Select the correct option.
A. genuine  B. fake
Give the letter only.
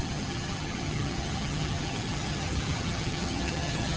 B